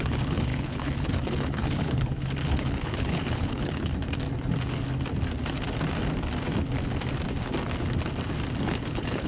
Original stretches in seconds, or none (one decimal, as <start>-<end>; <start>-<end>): 3.9-8.6